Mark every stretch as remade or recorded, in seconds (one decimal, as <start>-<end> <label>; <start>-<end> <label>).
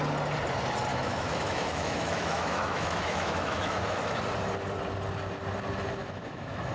0.0-0.9 recorded; 0.9-4.2 remade; 4.2-6.0 recorded; 6.0-6.7 remade